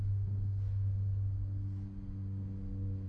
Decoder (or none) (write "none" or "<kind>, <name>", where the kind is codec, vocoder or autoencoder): none